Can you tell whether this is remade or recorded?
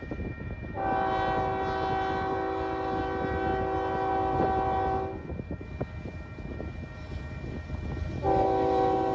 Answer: recorded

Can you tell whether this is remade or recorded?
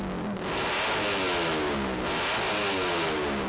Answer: recorded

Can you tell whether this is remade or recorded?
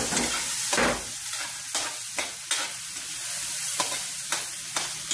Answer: recorded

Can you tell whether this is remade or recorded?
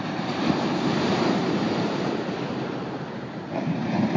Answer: remade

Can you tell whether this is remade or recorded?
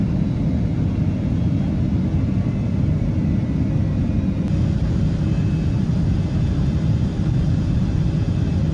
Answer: recorded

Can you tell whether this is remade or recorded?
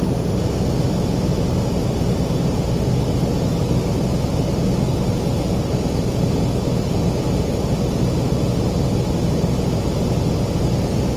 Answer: recorded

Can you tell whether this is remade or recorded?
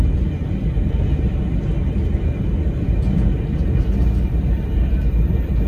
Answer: remade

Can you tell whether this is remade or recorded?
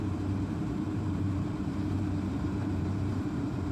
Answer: remade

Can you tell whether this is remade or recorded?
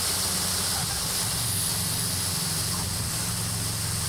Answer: recorded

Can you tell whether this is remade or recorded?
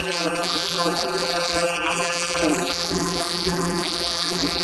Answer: remade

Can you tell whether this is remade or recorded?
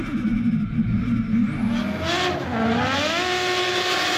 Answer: recorded